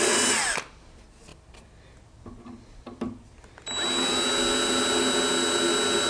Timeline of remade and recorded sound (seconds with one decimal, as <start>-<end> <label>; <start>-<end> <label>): 0.0-6.1 recorded